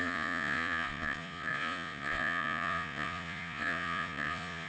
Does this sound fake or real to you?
fake